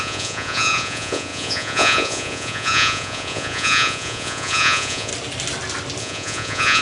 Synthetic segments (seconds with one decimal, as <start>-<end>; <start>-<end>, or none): 0.0-5.1; 6.0-6.8